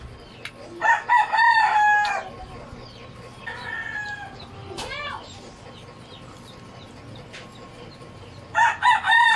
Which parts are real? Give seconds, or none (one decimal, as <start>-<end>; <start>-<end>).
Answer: 0.0-9.4